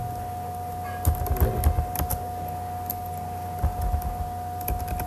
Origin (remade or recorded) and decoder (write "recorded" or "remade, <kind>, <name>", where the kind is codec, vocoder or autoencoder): recorded